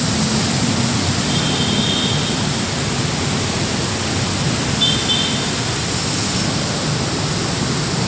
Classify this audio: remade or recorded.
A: recorded